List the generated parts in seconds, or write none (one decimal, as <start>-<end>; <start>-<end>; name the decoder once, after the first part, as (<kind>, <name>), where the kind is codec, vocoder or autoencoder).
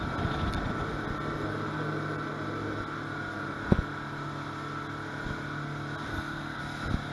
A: 6.1-6.6 (codec, SNAC)